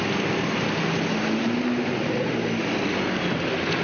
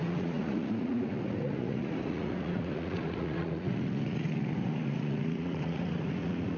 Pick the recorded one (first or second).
first